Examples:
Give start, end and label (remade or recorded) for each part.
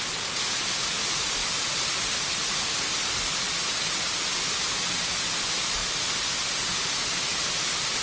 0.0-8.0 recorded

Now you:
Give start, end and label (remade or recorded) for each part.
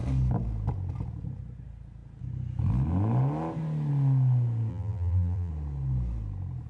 0.0-4.7 recorded; 4.7-5.5 remade; 5.5-6.7 recorded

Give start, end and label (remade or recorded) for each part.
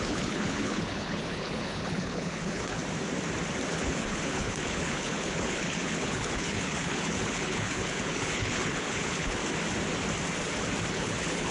0.0-2.8 remade; 2.8-3.7 recorded; 3.7-9.4 remade; 9.4-10.9 recorded; 10.9-11.5 remade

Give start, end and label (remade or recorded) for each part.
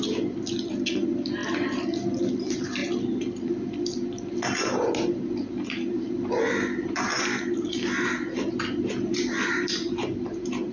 0.0-10.7 recorded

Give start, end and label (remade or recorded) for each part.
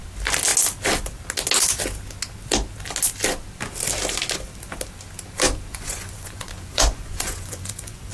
0.0-5.7 recorded; 5.7-8.1 remade